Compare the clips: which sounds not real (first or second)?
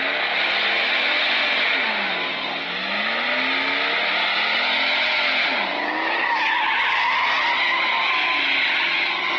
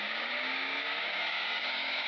second